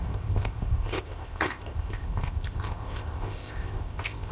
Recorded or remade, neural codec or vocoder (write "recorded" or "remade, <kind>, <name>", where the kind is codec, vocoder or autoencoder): remade, codec, ZipCodec